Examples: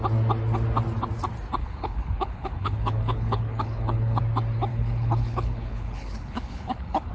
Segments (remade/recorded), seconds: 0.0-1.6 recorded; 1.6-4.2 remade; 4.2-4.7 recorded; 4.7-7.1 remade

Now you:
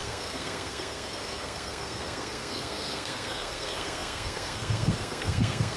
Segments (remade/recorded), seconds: 0.0-5.8 remade

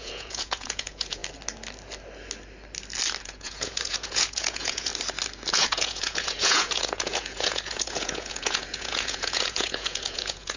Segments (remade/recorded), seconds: 0.0-1.2 remade; 1.2-3.2 recorded; 3.2-4.9 remade; 4.9-5.5 recorded; 5.5-10.6 remade

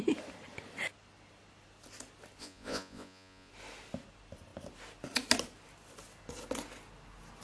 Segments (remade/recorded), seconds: 0.0-2.4 recorded; 2.4-3.5 remade; 3.5-7.4 recorded

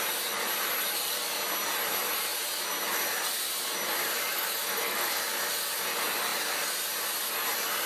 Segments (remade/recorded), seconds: 0.0-4.3 recorded; 4.3-5.2 remade; 5.2-7.9 recorded